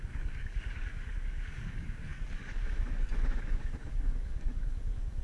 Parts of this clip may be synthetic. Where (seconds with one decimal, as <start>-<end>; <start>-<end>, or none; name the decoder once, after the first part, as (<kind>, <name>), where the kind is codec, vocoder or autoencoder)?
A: 0.0-5.2 (codec, DAC)